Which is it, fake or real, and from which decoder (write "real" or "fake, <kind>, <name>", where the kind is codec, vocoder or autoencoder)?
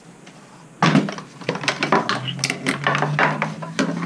real